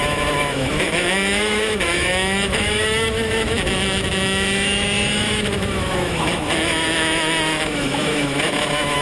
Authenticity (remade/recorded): remade